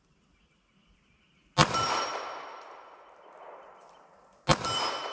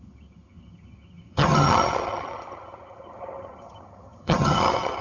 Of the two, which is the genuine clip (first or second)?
first